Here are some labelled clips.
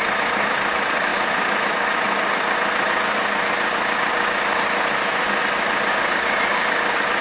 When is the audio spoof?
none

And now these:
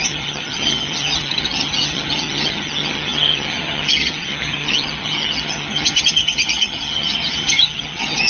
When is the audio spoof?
0.0-8.3 (vocoder, HiFi-GAN)

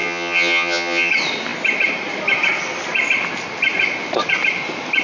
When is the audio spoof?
0.0-1.1 (vocoder, HiFi-GAN)